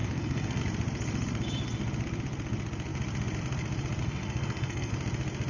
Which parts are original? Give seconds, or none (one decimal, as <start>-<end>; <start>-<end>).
0.6-4.0; 4.9-5.5